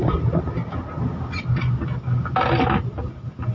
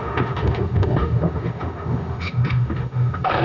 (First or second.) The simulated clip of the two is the second